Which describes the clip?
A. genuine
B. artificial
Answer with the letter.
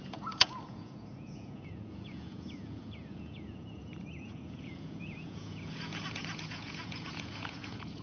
B